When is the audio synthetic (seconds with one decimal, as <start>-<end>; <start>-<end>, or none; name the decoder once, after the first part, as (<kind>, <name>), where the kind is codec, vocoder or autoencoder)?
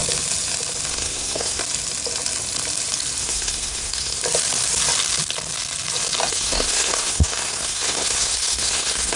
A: 0.9-1.6 (codec, SNAC); 3.2-4.2; 6.3-9.2